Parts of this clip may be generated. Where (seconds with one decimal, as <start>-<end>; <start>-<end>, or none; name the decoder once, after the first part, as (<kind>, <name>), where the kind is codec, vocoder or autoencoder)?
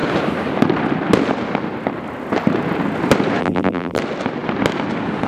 3.4-4.0 (vocoder, BigVGAN v2)